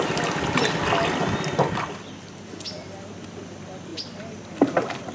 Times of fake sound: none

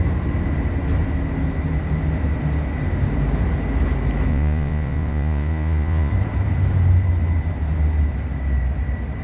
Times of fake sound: 4.3-6.1 (vocoder, Vocos)

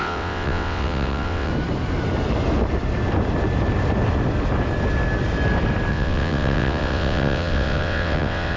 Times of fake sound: 0.0-1.5 (vocoder, WaveNeXt); 5.9-8.6

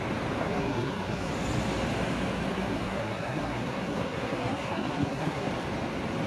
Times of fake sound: 0.4-1.3 (codec, SNAC); 2.5-5.5

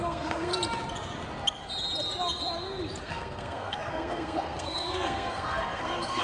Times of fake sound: 0.0-0.5 (codec, SNAC); 3.0-6.2

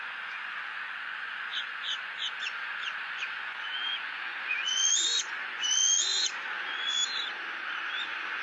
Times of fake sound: 0.0-7.0 (vocoder, Vocos); 8.0-8.4

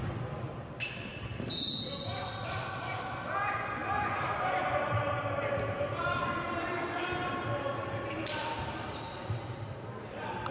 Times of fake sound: none